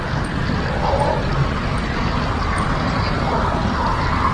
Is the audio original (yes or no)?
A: yes